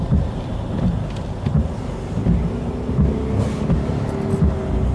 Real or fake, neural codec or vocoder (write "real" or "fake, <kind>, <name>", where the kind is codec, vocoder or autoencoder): real